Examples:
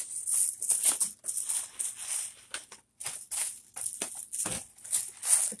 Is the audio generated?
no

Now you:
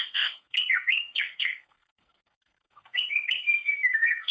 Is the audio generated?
yes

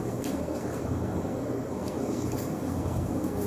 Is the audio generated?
yes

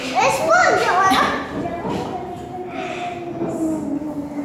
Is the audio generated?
no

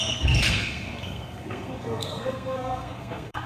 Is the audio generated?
yes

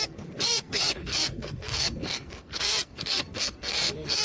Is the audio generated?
yes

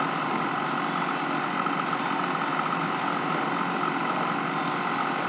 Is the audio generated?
no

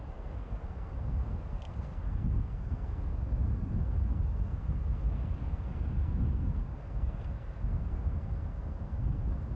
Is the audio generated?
yes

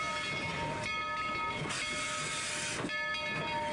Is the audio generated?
no